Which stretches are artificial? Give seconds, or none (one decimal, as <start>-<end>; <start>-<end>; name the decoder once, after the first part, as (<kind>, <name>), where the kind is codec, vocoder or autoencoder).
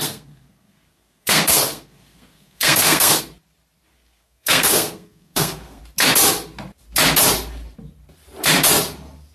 0.0-3.2 (codec, SNAC); 3.9-5.8